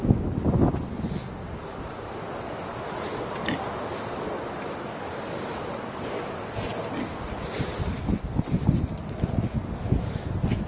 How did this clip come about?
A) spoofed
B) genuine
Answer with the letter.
B